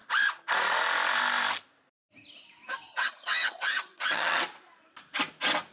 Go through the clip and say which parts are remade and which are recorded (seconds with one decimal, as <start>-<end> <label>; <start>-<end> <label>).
0.0-2.9 recorded; 2.9-4.4 remade; 4.4-5.7 recorded